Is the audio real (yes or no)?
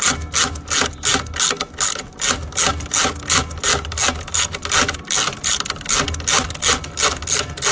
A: yes